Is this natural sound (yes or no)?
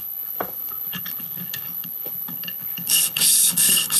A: no